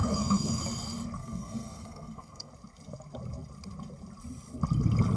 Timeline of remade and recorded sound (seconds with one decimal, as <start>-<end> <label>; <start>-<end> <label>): 0.0-0.6 remade; 0.6-1.2 recorded; 1.2-2.5 remade; 2.5-5.2 recorded